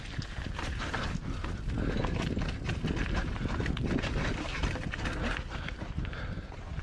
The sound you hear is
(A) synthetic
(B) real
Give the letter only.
B